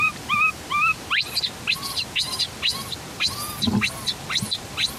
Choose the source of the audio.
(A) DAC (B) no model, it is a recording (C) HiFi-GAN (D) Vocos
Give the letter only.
B